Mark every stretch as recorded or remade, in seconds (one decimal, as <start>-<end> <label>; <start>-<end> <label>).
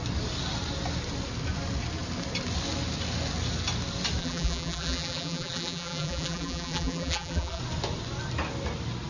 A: 0.0-4.2 recorded; 4.2-7.6 remade; 7.6-9.1 recorded